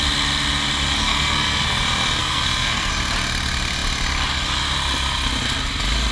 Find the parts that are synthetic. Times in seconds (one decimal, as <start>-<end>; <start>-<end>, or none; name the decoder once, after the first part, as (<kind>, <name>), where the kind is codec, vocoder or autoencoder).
1.0-1.8 (codec, SNAC); 2.2-2.9